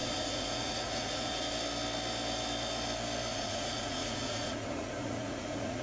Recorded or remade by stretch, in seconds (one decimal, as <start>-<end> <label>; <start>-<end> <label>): 0.0-1.5 remade; 1.5-3.3 recorded; 3.3-5.8 remade